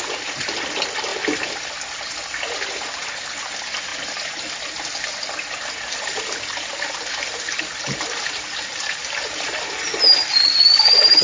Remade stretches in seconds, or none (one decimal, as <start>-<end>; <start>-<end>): none